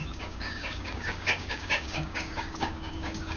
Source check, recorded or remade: remade